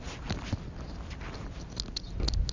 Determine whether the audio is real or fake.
real